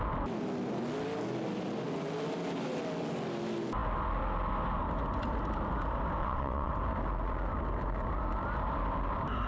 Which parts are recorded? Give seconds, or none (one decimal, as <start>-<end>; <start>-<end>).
0.0-6.2; 6.7-9.5

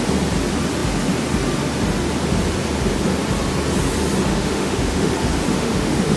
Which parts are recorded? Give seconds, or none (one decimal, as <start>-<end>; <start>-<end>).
0.0-4.3; 5.1-5.5

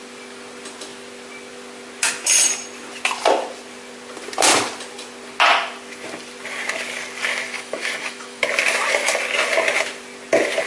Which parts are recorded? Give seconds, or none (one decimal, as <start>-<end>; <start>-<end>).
0.0-7.3; 8.4-10.7

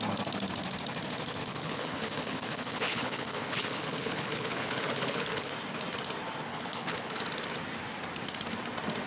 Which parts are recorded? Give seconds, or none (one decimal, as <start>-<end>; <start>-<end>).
0.0-1.4; 5.5-6.5; 7.2-9.1

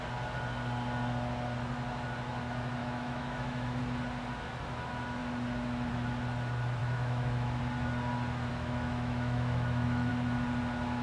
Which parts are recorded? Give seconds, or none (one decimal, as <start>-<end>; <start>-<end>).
0.0-2.8; 3.8-6.8; 7.6-8.5; 10.1-11.0

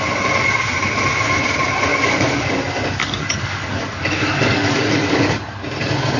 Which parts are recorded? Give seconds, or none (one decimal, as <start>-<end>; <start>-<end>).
0.0-1.9; 2.5-3.0; 5.4-6.2

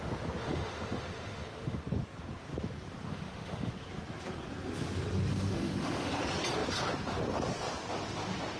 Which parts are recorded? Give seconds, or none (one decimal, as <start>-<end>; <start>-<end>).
0.0-0.4; 1.8-3.1; 3.7-5.3; 6.1-8.6

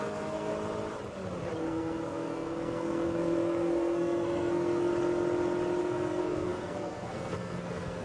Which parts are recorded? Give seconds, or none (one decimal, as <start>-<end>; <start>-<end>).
0.5-1.6; 4.9-5.8